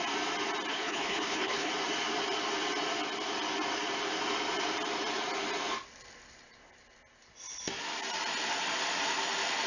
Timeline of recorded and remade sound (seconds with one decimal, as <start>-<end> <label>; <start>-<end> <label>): 0.0-0.7 recorded; 0.7-1.7 remade; 1.7-9.7 recorded